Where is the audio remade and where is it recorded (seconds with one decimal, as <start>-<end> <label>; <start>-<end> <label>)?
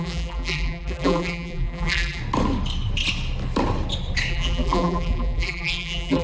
0.0-2.2 remade; 2.2-4.3 recorded; 4.3-6.2 remade